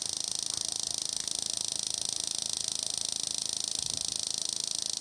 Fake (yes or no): no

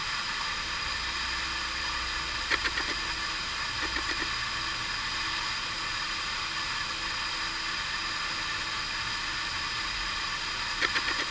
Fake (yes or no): no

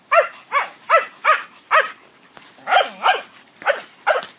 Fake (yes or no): no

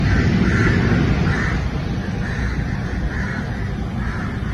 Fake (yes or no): no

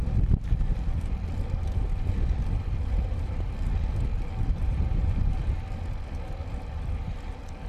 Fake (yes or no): no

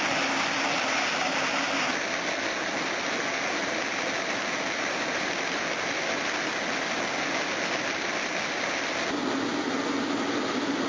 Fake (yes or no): no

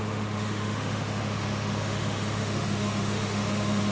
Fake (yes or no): yes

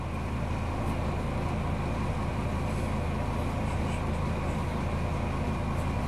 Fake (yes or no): no